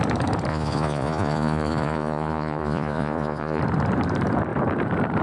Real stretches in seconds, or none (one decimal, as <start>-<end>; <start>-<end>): 0.0-0.5; 3.6-5.2